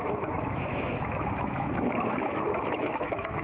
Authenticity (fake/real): fake